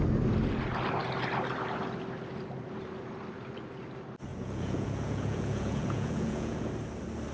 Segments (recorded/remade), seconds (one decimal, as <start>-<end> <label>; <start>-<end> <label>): 0.0-4.3 recorded; 4.3-6.7 remade; 6.7-7.3 recorded